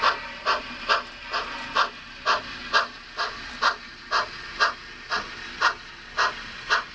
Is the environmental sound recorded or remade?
recorded